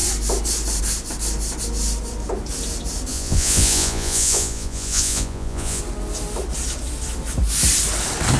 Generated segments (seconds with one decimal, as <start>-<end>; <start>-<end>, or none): 3.1-5.8